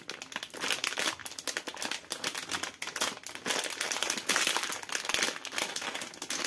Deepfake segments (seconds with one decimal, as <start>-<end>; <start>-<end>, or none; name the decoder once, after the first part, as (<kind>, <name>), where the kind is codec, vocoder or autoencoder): none